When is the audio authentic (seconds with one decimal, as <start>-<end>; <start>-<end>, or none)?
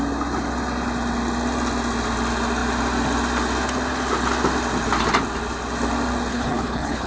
0.0-6.3